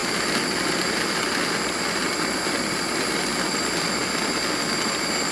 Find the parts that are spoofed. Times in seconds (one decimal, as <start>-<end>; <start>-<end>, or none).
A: 0.6-4.0